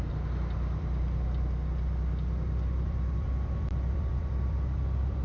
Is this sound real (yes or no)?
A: no